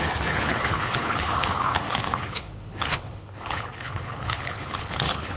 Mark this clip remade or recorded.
remade